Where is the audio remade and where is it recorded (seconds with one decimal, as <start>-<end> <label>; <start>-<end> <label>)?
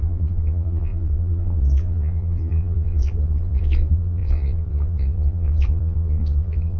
0.0-6.8 remade